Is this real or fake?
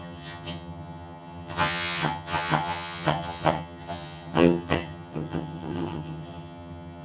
fake